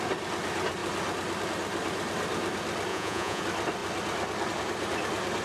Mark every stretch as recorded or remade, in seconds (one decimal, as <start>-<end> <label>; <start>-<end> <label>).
0.0-2.9 recorded; 2.9-3.4 remade; 3.4-5.4 recorded